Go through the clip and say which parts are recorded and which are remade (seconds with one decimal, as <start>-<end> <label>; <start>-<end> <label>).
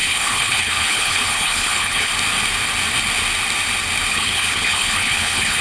0.0-2.1 remade; 2.1-4.1 recorded; 4.1-5.6 remade